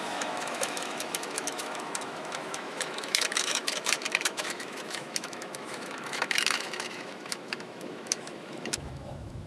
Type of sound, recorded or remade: remade